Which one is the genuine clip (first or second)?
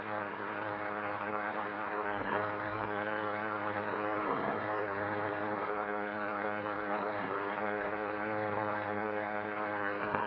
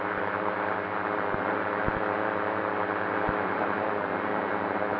second